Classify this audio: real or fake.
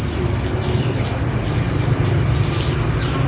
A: real